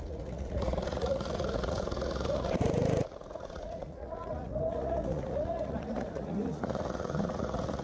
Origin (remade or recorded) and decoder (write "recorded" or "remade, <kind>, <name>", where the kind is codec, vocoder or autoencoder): remade, vocoder, Vocos